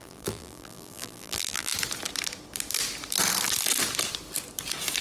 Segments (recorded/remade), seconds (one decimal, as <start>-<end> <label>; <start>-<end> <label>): 0.0-1.7 remade; 1.7-5.0 recorded